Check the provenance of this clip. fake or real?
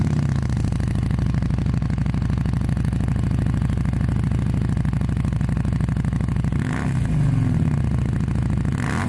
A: real